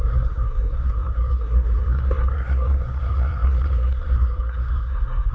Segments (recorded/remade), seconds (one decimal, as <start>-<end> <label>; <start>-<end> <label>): 0.0-5.3 remade